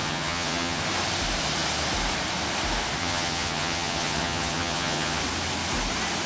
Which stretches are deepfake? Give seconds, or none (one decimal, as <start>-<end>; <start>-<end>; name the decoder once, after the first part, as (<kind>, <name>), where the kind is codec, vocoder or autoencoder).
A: 0.0-0.8 (vocoder, HiFi-GAN); 3.0-5.2